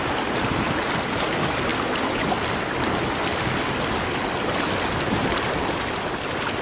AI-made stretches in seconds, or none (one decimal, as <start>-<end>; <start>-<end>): none